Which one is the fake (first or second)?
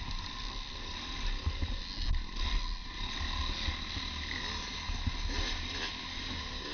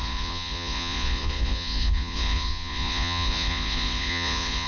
second